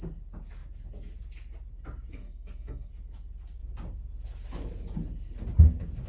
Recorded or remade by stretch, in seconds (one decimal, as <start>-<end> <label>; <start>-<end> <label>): 0.0-2.1 recorded; 2.1-2.9 remade; 2.9-6.1 recorded